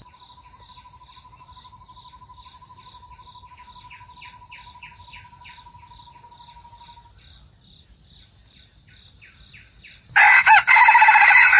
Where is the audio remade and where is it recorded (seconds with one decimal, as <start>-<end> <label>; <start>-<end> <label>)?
0.0-11.6 recorded